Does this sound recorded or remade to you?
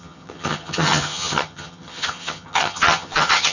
remade